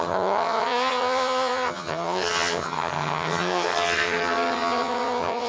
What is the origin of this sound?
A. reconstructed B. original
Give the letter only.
A